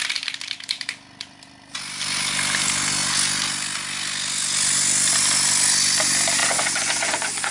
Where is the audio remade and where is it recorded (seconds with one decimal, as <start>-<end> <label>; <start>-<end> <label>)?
0.0-6.4 recorded; 6.4-7.5 remade